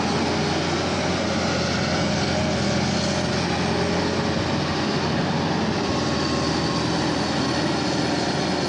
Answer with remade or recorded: recorded